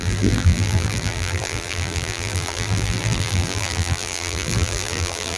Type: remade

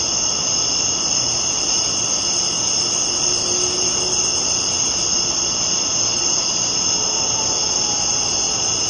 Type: recorded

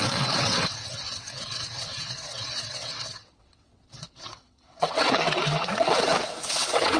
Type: remade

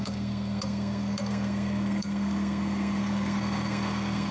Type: remade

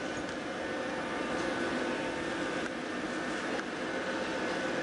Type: recorded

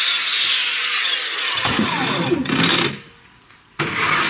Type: recorded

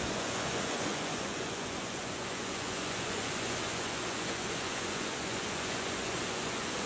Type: remade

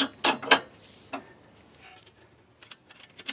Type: recorded